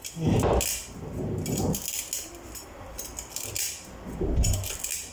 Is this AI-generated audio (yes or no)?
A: no